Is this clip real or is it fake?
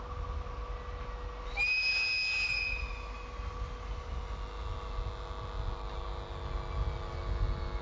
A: real